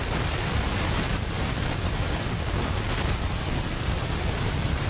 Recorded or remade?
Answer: recorded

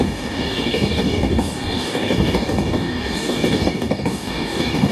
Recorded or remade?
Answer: remade